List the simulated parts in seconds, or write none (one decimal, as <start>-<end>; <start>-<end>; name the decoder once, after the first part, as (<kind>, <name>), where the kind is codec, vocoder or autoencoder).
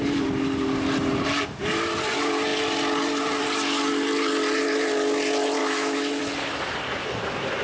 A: 5.6-6.2 (autoencoder, DAC-VAE)